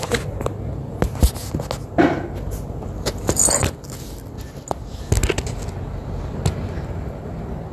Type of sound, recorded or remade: recorded